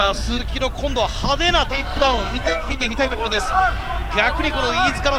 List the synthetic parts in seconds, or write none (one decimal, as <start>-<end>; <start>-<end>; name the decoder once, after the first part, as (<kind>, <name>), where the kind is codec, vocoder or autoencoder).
0.0-0.4 (codec, SNAC); 1.7-3.6